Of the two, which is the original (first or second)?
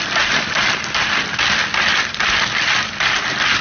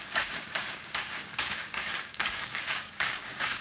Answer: first